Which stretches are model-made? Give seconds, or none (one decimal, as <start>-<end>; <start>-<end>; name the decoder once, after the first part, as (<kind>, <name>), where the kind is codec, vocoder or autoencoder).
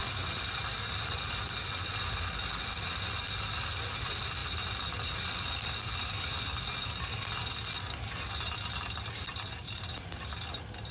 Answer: none